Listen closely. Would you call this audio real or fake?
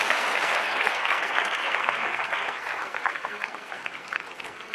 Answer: fake